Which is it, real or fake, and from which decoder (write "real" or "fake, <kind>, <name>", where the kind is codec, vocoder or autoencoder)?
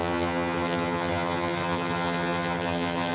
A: fake, vocoder, HiFi-GAN